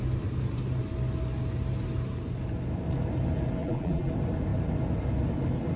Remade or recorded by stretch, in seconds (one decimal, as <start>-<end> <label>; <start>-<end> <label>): 0.0-3.6 recorded; 3.6-4.1 remade; 4.1-5.8 recorded